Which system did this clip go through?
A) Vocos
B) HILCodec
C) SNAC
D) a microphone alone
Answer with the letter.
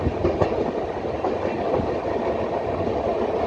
D